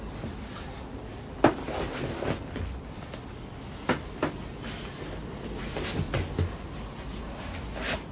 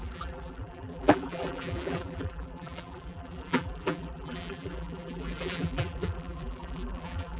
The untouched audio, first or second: first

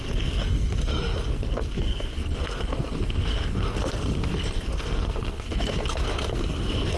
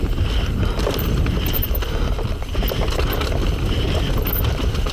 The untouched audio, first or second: second